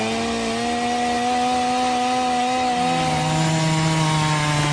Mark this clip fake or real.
real